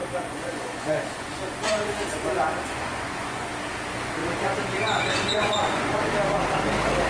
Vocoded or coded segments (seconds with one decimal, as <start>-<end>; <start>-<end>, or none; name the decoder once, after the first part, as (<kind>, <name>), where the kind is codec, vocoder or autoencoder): 0.0-3.5 (vocoder, Vocos); 4.2-6.0